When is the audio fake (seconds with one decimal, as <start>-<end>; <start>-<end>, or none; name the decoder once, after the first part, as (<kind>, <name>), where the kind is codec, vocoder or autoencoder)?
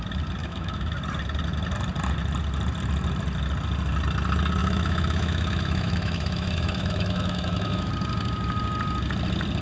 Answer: 0.4-0.9 (autoencoder, DAC-VAE); 4.6-7.9